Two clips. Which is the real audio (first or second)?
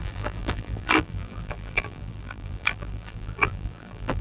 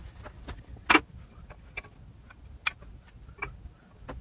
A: second